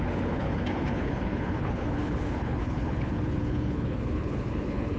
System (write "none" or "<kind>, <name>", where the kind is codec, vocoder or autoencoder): codec, HILCodec